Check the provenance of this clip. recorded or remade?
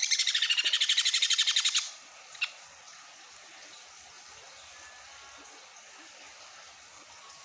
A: recorded